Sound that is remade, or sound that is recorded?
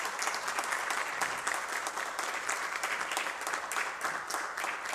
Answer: recorded